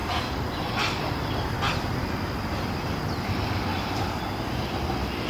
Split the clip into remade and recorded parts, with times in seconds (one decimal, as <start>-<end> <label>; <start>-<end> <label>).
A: 0.0-3.7 recorded; 3.7-4.2 remade; 4.2-5.3 recorded